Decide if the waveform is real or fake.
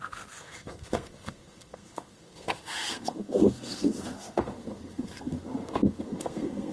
fake